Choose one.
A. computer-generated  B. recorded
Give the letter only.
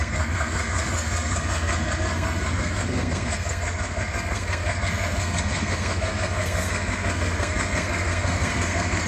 A